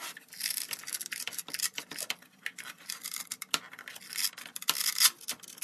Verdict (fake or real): real